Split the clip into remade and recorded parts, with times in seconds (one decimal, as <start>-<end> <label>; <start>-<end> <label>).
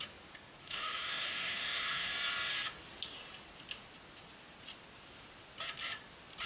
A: 0.0-0.6 recorded; 0.6-2.1 remade; 2.1-6.5 recorded